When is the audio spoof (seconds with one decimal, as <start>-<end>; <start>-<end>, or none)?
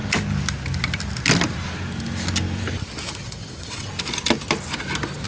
3.2-3.9